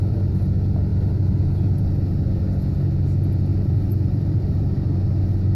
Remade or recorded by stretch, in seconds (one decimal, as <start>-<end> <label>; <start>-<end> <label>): 0.0-3.5 recorded; 3.5-4.7 remade; 4.7-5.5 recorded